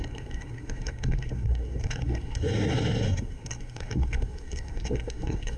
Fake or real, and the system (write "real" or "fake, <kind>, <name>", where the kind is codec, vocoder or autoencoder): fake, codec, SNAC